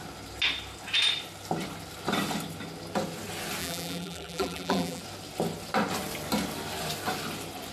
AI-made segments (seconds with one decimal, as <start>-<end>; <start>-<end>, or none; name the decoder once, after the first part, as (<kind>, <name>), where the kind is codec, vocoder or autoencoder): 3.6-5.0 (vocoder, BigVGAN v2)